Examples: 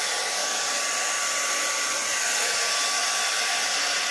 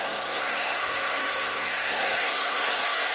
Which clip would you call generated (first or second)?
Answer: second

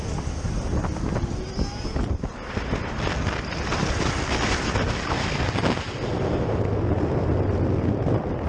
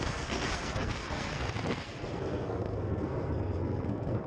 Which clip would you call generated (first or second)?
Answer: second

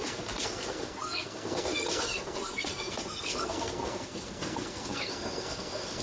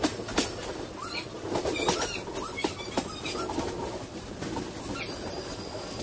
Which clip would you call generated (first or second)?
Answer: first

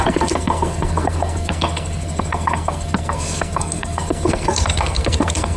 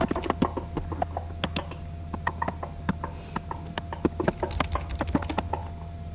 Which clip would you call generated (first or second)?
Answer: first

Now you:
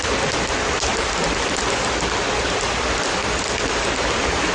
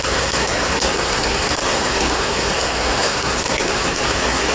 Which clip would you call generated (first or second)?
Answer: second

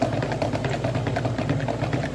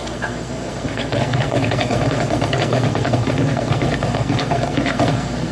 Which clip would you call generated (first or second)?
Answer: second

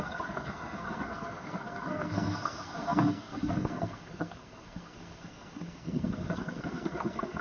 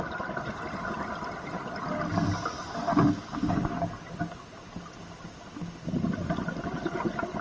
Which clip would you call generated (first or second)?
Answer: first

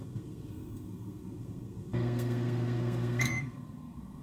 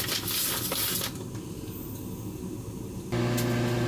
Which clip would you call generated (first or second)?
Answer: first